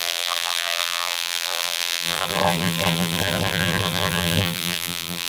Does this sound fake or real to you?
fake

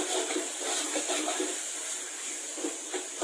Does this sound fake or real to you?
real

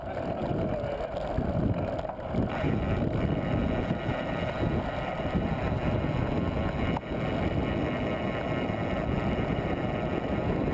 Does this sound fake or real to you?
real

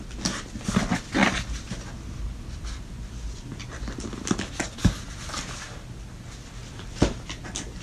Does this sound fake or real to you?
real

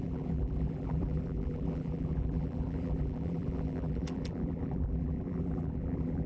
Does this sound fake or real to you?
fake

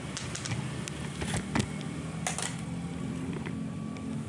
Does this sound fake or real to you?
real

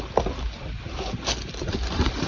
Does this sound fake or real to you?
fake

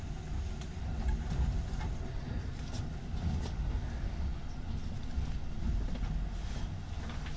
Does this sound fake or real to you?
real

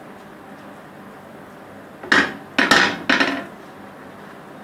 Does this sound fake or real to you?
real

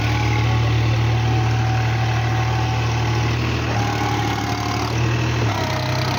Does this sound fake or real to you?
real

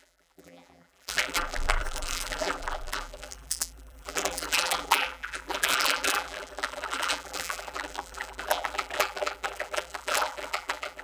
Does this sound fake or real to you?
fake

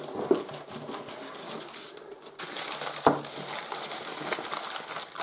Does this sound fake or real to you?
real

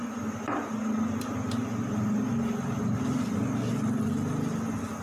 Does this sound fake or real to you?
real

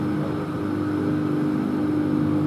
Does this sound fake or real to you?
real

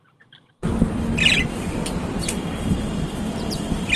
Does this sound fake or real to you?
fake